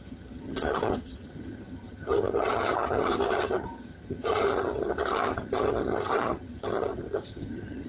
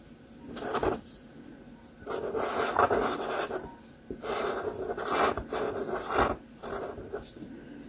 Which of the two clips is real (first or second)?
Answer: second